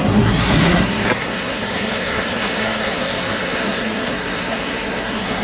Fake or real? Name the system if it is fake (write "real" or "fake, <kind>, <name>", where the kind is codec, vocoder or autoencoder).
fake, codec, SNAC